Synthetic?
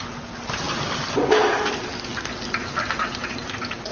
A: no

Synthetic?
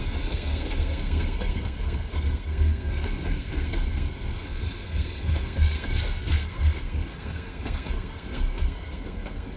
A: yes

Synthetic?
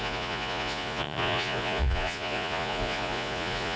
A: yes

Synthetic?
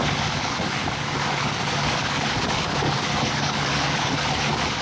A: yes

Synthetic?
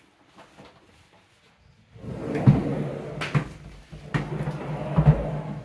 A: no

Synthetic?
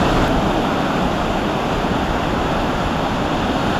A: no